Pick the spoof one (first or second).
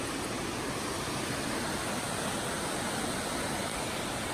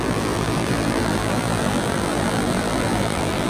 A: second